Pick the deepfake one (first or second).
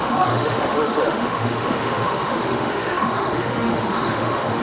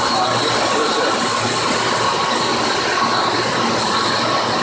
first